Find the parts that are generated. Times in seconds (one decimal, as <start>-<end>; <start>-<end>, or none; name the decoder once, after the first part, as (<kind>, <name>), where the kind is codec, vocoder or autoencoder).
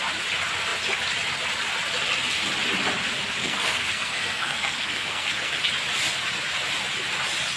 3.4-5.6 (codec, SNAC)